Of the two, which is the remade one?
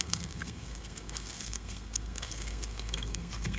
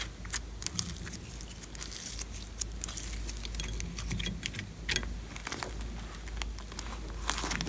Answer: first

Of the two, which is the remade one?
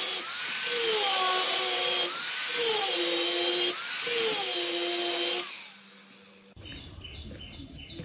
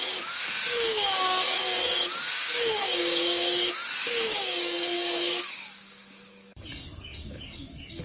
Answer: second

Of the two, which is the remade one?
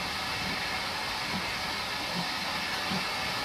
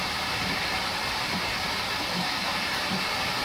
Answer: second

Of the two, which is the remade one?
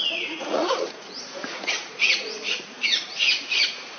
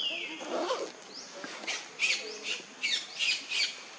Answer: first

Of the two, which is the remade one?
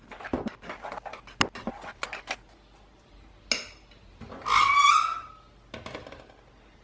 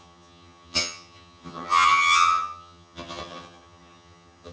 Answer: second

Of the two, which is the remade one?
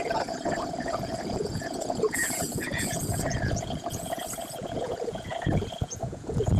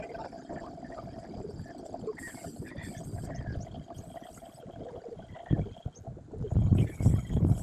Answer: first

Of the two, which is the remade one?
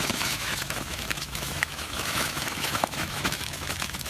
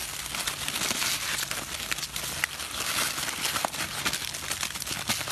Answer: first